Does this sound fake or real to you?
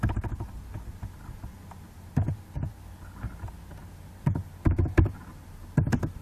real